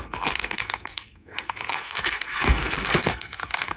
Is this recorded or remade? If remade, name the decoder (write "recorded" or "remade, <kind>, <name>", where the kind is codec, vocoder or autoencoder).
remade, codec, SNAC